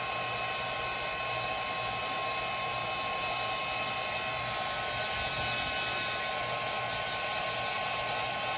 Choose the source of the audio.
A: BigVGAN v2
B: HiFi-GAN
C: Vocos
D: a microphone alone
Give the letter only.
D